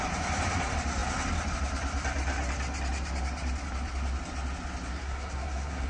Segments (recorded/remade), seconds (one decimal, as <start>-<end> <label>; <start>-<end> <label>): 0.0-4.9 recorded; 4.9-5.9 remade